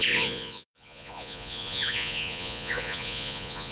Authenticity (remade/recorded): remade